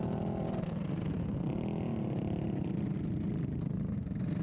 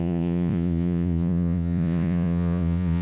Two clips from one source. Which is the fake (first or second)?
second